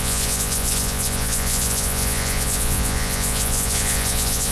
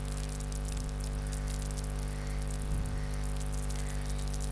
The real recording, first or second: second